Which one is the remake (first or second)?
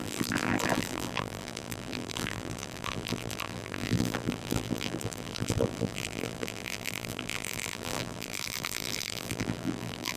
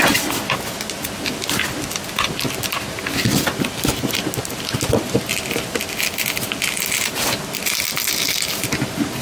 first